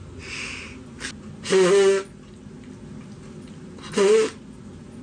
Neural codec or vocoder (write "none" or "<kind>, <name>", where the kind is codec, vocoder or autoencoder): none